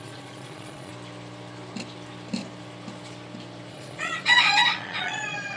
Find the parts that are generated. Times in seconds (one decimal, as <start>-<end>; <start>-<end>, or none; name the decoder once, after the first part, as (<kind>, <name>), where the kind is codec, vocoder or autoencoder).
0.0-0.9 (vocoder, Vocos); 3.7-5.6